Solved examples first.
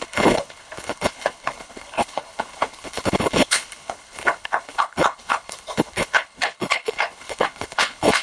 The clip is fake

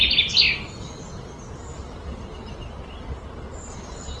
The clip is real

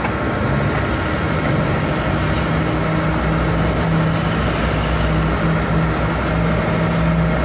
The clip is real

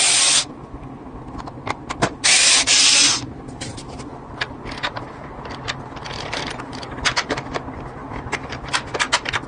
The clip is real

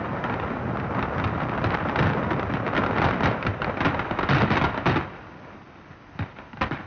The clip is real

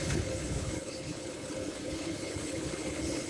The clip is fake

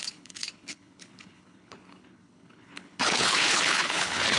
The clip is fake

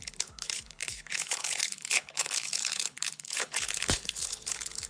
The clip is fake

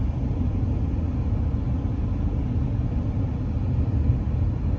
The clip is real